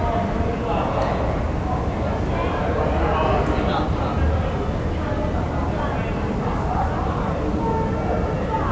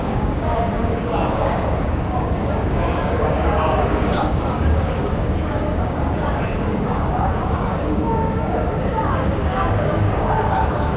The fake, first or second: second